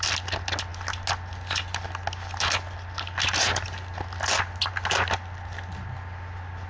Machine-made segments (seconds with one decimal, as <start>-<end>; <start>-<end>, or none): none